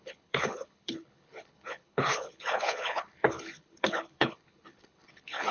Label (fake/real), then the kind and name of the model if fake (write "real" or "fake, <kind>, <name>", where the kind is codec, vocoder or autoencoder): fake, codec, HILCodec